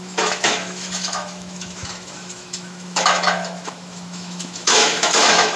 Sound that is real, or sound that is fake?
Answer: fake